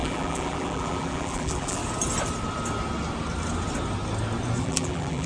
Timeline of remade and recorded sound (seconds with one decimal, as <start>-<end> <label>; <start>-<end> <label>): 0.0-1.8 remade; 1.8-4.6 recorded; 4.6-5.3 remade